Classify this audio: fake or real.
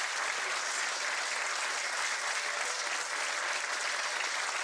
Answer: real